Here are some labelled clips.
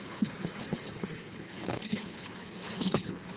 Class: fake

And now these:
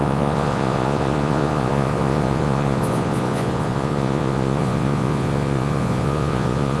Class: fake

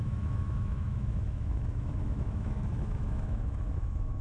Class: fake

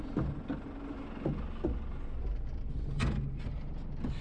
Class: real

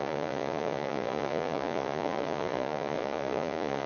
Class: fake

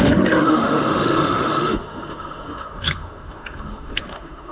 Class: fake